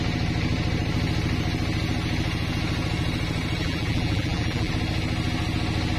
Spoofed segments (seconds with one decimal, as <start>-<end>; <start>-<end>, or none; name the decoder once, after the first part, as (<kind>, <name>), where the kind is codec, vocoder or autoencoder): 3.6-4.7 (vocoder, BigVGAN v2)